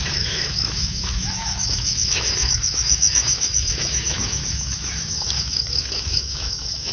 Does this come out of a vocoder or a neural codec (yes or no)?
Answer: yes